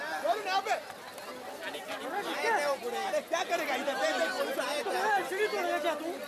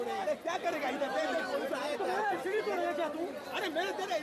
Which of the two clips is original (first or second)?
first